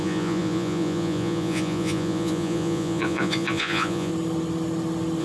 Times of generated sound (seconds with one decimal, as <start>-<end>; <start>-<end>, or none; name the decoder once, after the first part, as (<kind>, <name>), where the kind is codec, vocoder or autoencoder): 0.0-4.1 (vocoder, Vocos)